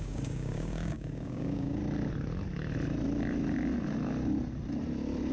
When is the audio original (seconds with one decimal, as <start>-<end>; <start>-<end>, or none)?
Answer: 1.8-5.3